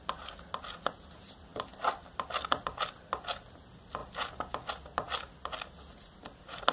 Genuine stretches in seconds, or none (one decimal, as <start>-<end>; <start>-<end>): 0.0-1.5; 2.8-4.0; 4.7-6.7